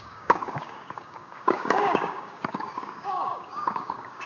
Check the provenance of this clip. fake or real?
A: fake